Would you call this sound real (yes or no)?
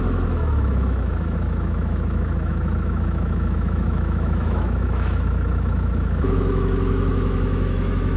no